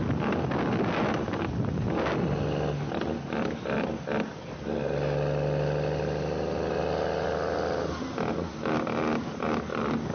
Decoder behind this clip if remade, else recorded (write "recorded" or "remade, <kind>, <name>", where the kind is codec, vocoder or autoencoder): recorded